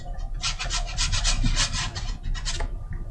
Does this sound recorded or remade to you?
recorded